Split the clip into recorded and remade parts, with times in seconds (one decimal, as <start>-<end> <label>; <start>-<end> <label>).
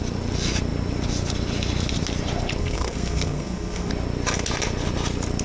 0.0-2.6 recorded; 2.6-3.9 remade; 3.9-5.4 recorded